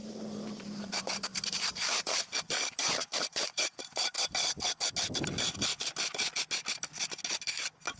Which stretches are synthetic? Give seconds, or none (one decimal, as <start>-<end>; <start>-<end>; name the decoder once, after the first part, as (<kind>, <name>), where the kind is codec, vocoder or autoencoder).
0.0-4.1 (vocoder, BigVGAN v2)